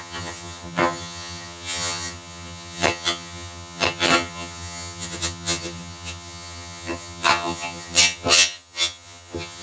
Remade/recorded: remade